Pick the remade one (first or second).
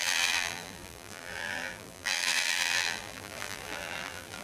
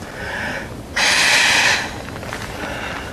first